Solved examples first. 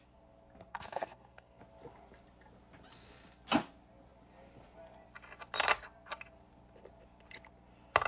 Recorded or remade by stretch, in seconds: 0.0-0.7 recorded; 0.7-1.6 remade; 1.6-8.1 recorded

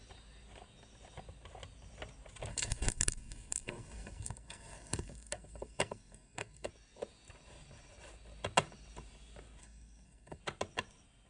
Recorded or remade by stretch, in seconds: 0.0-2.5 recorded; 2.5-6.7 remade; 6.7-9.6 recorded; 9.6-10.4 remade; 10.4-11.3 recorded

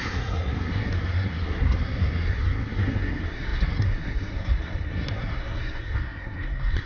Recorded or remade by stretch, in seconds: 0.0-6.9 remade

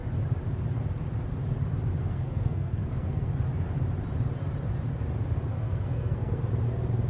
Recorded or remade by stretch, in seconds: 0.0-2.0 recorded; 2.0-3.3 remade; 3.3-5.5 recorded; 5.5-6.5 remade; 6.5-7.1 recorded